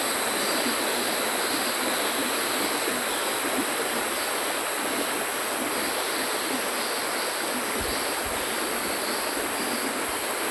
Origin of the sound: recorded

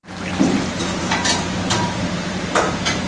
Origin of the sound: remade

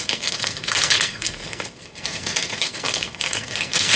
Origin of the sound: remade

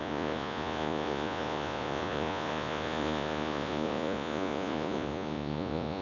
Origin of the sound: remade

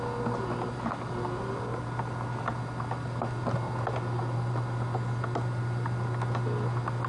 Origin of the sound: recorded